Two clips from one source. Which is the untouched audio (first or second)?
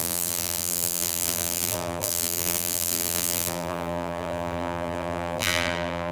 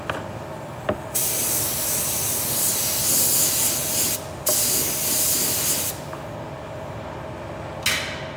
second